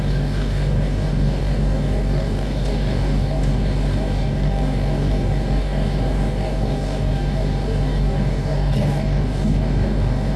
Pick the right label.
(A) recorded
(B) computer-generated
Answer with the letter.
B